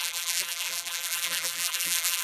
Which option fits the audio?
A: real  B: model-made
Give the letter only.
B